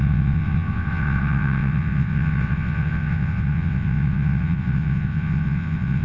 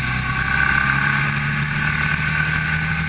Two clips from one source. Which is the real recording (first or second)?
second